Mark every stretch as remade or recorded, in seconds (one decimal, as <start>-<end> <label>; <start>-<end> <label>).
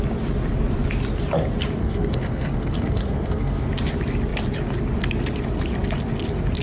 0.0-1.8 recorded; 1.8-3.7 remade; 3.7-6.6 recorded